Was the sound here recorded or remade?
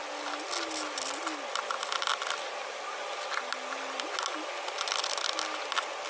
recorded